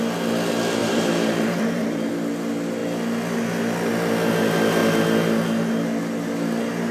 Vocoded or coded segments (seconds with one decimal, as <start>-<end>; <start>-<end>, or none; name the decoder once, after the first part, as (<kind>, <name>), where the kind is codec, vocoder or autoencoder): 0.8-2.1 (vocoder, BigVGAN v2)